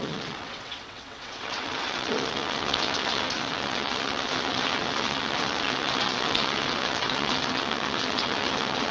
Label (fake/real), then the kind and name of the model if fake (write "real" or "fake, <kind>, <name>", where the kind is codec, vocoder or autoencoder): fake, vocoder, WaveNeXt